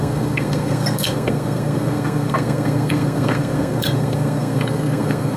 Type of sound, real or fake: fake